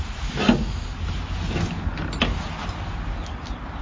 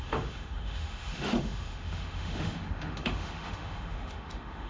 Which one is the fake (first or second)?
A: second